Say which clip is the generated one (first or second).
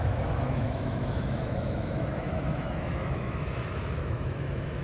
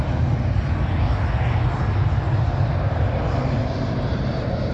first